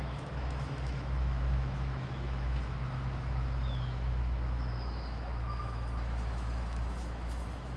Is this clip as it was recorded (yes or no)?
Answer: no